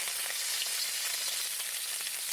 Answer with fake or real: real